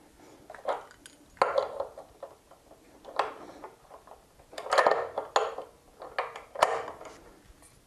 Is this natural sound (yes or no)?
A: yes